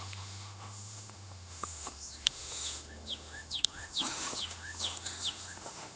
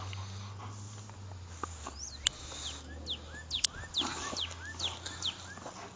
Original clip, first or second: second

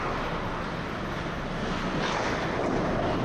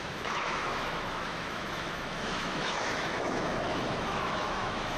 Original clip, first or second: first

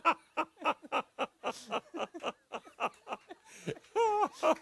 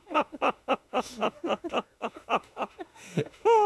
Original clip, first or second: first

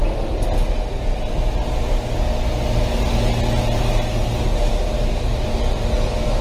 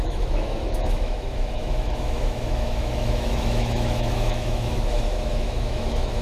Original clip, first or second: first